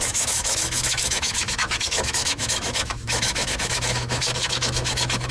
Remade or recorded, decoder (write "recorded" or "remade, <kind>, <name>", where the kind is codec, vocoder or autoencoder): remade, autoencoder, DAC-VAE